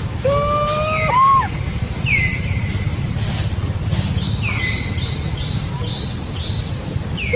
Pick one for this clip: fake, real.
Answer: real